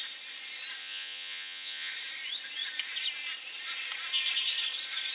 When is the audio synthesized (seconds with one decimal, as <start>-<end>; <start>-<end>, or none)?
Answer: 0.8-1.9